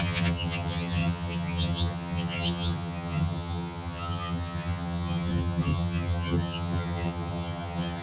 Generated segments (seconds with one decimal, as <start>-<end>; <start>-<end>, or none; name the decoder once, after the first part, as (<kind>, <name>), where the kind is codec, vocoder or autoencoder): 0.0-8.0 (vocoder, HiFi-GAN)